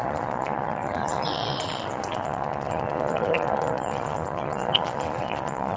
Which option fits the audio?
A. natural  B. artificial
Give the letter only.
B